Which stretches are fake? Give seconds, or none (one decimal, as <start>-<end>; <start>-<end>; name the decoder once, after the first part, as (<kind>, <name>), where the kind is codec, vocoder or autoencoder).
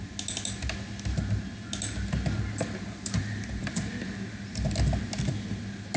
none